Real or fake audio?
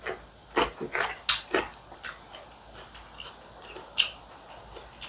real